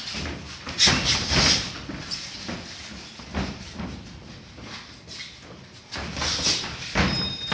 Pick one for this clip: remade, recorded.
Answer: recorded